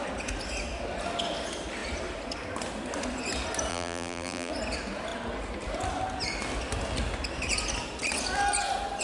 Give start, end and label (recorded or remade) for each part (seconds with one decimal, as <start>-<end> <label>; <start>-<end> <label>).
0.0-3.7 recorded; 3.7-4.5 remade; 4.5-9.0 recorded